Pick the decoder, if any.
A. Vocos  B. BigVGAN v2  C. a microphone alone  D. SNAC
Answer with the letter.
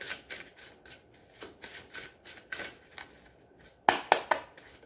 C